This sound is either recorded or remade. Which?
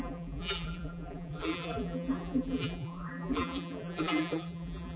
remade